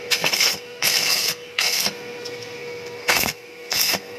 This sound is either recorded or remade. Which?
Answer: remade